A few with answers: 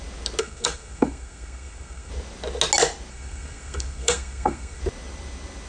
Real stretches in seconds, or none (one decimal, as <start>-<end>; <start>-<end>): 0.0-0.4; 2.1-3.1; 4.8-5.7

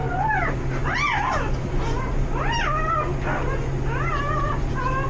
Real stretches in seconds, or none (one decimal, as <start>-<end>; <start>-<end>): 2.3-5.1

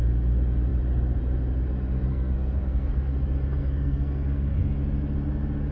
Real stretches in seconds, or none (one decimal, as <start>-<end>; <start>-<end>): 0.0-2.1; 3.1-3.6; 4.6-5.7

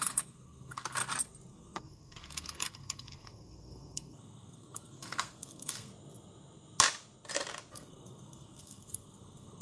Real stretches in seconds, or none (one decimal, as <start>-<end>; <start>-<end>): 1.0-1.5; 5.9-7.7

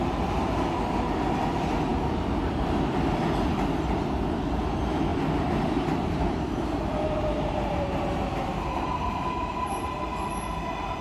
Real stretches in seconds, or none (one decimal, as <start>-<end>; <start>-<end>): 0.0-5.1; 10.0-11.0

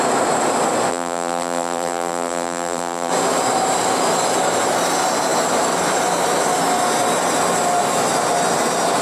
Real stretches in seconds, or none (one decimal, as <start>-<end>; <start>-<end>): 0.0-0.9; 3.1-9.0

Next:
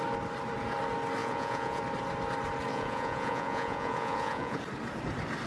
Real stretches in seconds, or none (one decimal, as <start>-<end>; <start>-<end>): 0.0-1.2; 1.8-2.7; 4.6-5.5